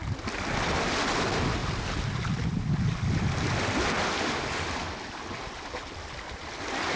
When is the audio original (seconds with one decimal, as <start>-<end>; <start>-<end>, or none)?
0.0-7.0